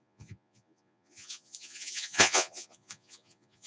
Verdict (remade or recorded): remade